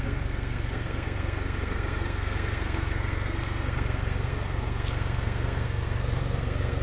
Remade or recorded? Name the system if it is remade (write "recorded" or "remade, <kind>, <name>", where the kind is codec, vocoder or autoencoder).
remade, codec, SNAC